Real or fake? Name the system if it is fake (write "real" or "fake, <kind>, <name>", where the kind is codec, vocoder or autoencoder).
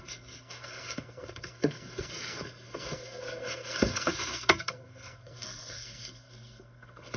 fake, codec, SNAC